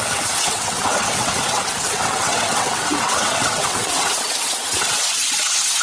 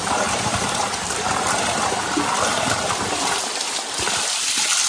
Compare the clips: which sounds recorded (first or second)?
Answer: second